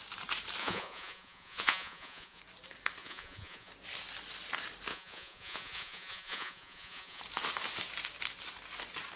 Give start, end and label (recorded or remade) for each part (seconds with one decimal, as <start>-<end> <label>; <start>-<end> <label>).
0.0-0.6 recorded; 0.6-2.4 remade; 2.4-3.0 recorded; 3.0-3.7 remade; 3.7-4.9 recorded; 4.9-7.2 remade; 7.2-9.2 recorded